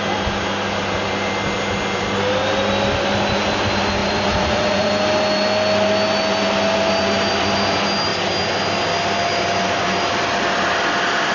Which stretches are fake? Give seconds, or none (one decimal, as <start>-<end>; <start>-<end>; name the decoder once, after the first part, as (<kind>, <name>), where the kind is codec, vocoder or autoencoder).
4.0-4.9 (vocoder, Vocos)